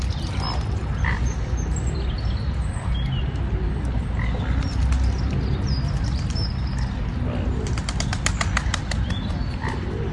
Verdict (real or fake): real